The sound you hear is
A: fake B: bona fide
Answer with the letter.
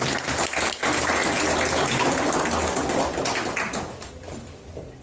B